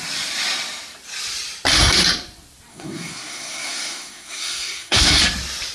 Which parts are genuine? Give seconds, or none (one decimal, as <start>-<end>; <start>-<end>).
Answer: 0.0-2.7; 5.2-5.7